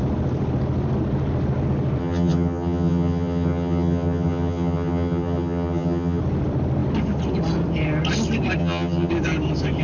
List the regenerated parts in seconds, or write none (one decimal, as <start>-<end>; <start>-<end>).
2.0-6.2; 8.6-9.1